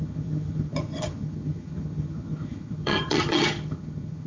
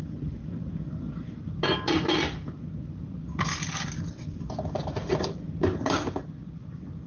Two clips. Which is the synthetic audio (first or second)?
first